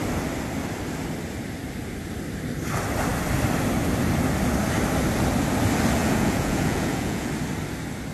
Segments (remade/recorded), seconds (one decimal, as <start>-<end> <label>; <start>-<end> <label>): 0.0-6.0 recorded; 6.0-7.3 remade; 7.3-8.1 recorded